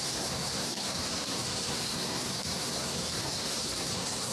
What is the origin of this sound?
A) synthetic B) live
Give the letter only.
A